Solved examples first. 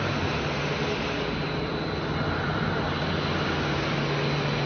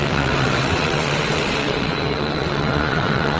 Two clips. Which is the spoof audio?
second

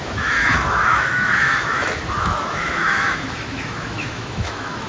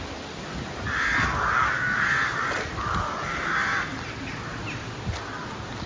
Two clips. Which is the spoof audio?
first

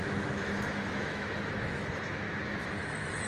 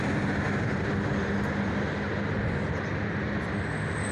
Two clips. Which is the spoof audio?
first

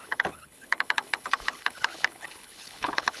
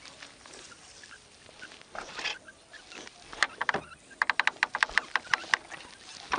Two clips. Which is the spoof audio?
first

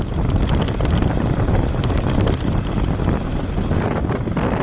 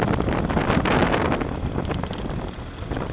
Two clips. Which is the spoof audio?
first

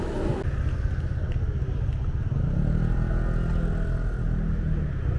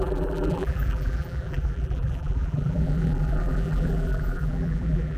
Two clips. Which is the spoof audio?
second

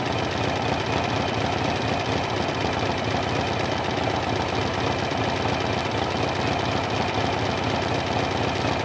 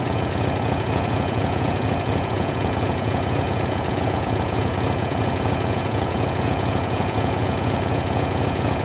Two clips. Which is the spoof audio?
second